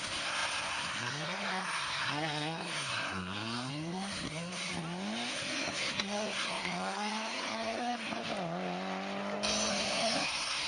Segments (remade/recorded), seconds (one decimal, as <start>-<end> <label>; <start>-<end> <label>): 0.0-4.7 remade; 4.7-5.3 recorded; 5.3-8.2 remade; 8.2-9.7 recorded; 9.7-10.7 remade